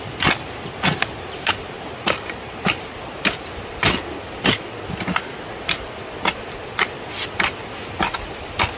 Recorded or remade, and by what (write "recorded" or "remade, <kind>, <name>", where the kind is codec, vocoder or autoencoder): recorded